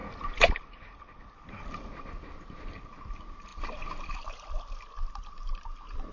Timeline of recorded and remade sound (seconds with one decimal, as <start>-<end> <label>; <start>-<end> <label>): 0.0-6.1 recorded